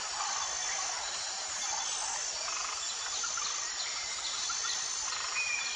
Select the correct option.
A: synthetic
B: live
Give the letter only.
B